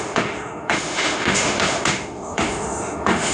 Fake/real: fake